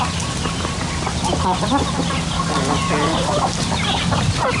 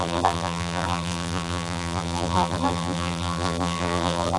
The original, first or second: first